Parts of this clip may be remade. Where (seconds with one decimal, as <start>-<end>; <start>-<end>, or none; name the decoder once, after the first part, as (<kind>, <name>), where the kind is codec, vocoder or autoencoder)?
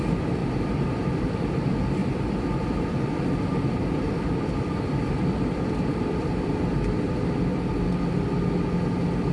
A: 0.4-1.1 (vocoder, BigVGAN v2); 2.0-6.5